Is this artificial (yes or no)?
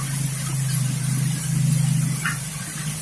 no